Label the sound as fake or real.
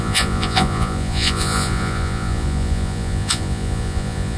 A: fake